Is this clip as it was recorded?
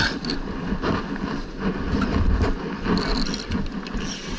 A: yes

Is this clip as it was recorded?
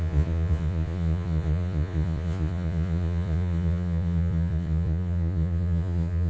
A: no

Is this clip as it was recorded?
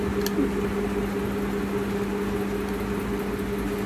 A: yes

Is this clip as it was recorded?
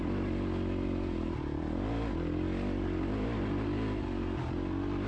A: yes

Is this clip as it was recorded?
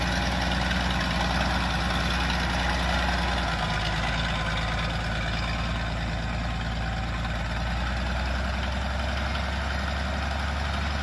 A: yes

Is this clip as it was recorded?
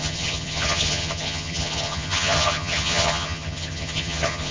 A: no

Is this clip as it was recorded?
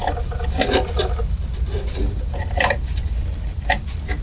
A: no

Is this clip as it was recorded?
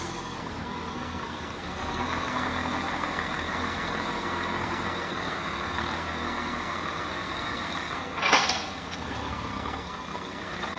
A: no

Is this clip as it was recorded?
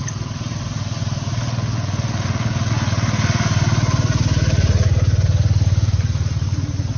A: yes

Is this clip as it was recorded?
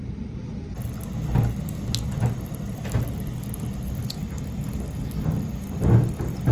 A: yes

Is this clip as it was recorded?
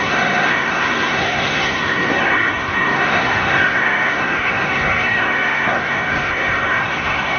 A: no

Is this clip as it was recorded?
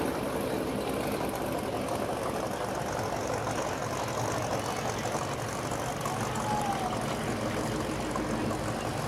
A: yes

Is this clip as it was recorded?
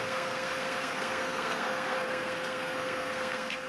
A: no